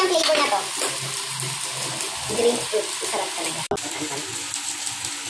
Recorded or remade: recorded